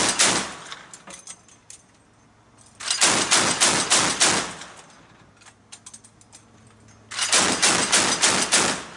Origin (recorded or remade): recorded